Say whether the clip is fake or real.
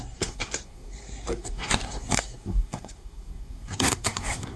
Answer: fake